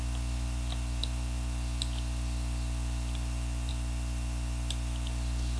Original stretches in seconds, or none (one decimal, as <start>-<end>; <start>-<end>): 0.0-5.6